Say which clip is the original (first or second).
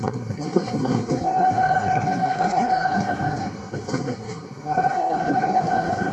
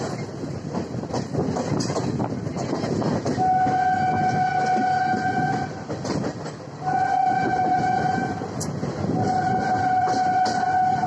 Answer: second